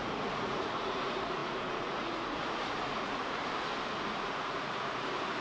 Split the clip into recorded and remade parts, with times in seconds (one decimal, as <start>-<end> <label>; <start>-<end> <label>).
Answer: 0.0-3.4 remade; 3.4-4.1 recorded; 4.1-5.4 remade